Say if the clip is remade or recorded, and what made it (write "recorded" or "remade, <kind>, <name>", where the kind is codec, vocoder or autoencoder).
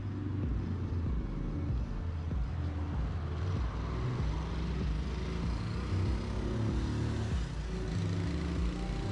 recorded